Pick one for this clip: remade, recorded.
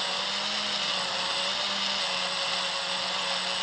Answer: recorded